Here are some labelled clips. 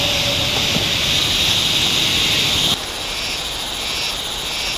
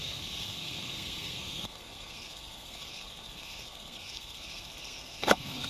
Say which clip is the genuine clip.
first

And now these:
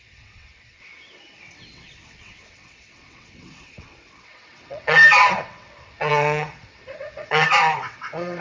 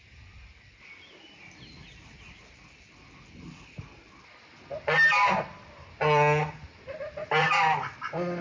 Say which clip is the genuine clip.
second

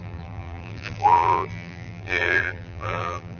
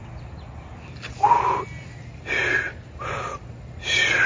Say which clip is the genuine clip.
second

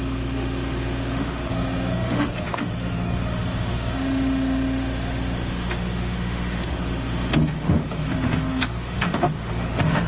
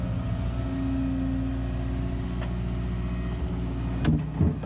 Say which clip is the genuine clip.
second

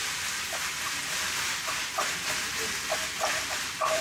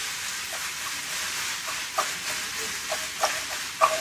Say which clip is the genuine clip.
second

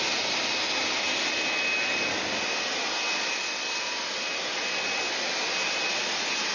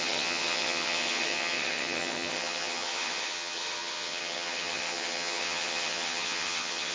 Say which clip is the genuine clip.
first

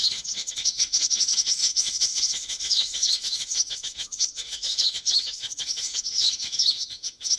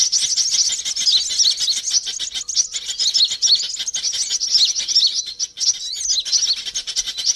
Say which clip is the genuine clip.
second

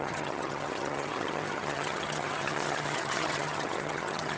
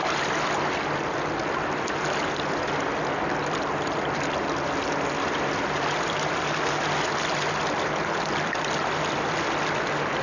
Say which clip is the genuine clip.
second